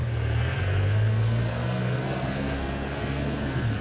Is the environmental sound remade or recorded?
remade